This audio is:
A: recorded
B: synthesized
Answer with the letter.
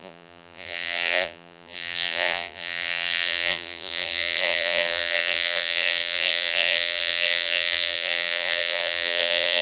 B